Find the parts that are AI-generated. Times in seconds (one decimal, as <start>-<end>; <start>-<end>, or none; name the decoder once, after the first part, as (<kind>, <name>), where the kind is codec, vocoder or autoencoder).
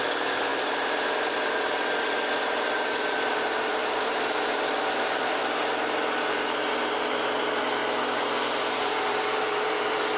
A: 0.0-5.4 (vocoder, BigVGAN v2); 6.2-7.8; 8.6-10.2